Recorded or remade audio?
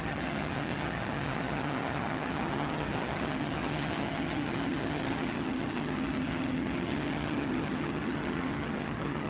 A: remade